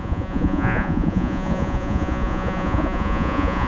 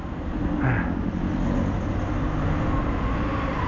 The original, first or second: second